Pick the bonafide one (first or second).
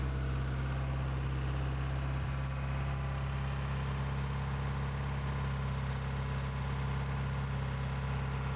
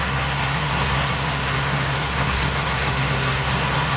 first